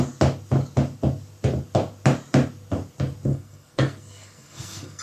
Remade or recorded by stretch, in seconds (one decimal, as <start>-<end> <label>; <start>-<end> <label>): 0.0-3.3 recorded; 3.3-5.0 remade